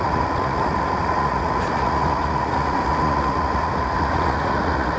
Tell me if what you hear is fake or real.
fake